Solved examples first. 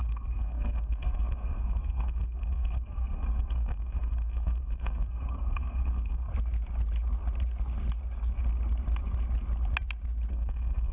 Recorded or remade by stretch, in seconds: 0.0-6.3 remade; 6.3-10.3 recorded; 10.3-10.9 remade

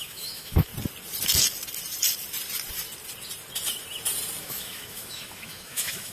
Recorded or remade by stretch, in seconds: 0.0-0.7 remade; 0.7-4.4 recorded; 4.4-6.1 remade

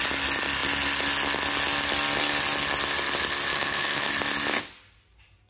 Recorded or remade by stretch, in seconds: 0.0-3.5 recorded; 3.5-4.1 remade; 4.1-5.5 recorded

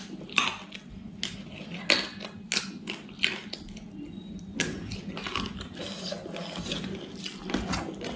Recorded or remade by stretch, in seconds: 0.0-8.2 recorded